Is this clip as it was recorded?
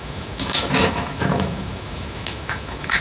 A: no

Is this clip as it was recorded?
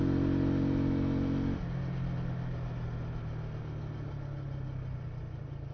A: yes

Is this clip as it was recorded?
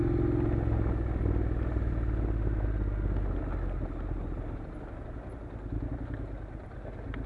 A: yes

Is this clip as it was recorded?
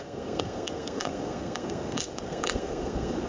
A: no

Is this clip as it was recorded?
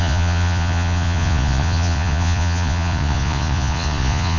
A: no